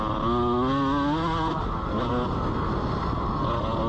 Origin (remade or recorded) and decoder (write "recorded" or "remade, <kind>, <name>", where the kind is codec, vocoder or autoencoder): recorded